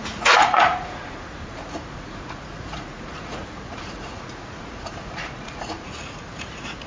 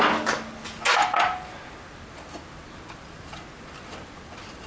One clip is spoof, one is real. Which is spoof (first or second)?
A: first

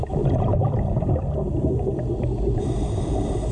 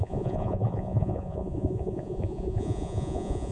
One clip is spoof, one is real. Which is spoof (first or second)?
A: second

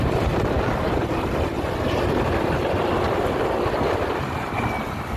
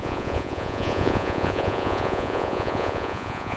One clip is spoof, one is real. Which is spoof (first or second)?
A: second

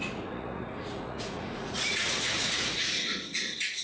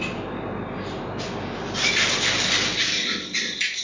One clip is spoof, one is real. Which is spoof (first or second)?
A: first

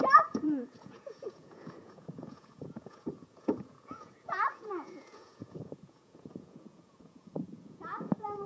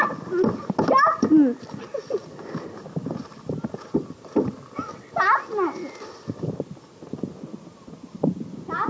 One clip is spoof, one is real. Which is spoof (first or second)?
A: first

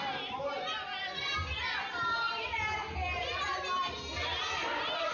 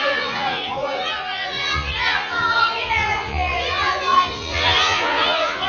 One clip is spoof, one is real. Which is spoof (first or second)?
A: second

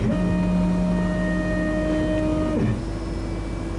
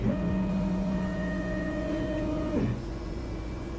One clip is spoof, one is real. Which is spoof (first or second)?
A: second